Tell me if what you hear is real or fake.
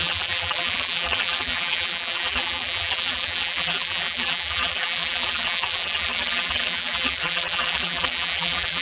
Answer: fake